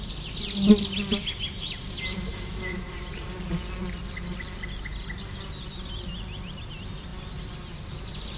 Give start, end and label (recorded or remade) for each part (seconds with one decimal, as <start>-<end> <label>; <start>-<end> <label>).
0.0-2.3 recorded; 2.3-3.5 remade; 3.5-8.4 recorded